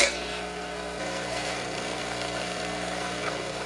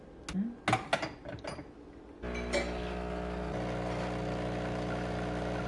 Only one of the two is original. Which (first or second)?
second